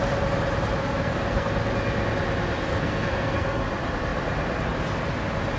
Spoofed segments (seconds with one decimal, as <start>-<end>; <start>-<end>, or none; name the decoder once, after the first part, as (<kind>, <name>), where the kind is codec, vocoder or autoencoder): 0.8-1.5 (codec, SNAC); 2.7-3.6